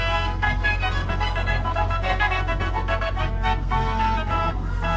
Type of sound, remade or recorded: remade